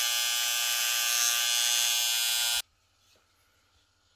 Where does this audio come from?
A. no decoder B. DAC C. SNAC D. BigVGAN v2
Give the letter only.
A